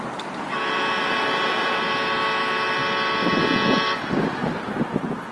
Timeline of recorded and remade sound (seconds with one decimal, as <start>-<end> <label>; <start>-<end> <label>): 0.0-1.0 recorded; 1.0-1.8 remade; 1.8-5.3 recorded